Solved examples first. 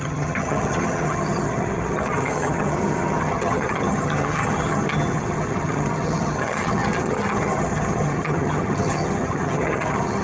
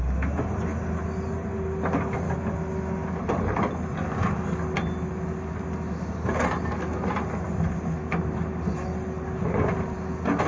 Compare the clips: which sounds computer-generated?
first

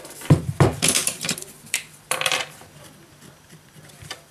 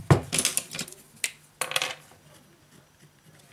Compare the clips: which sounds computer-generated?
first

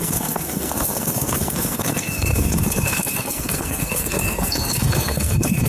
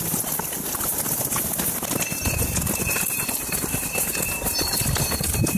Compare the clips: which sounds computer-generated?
first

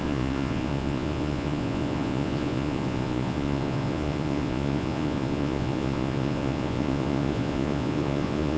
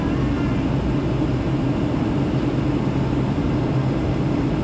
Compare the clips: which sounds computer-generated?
first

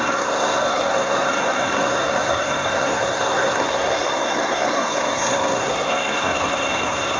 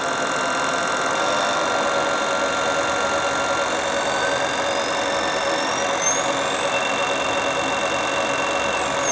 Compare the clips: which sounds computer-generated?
first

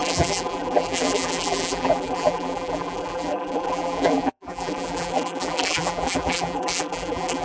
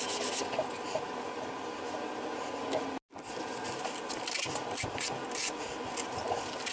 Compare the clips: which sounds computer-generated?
first